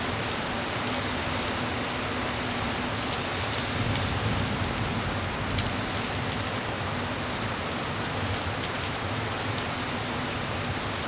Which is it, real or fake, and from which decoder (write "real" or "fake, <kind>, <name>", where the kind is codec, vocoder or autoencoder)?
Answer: real